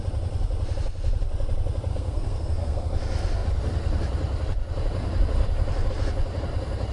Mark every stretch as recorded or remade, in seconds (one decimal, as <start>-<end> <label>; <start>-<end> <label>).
0.0-1.9 recorded; 1.9-2.8 remade; 2.8-6.9 recorded